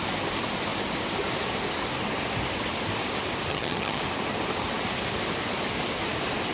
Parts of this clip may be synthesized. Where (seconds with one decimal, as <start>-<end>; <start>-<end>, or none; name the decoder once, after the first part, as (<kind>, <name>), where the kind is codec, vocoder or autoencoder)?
3.5-4.0 (vocoder, HiFi-GAN)